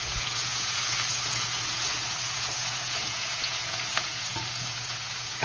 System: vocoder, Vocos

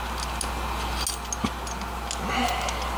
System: none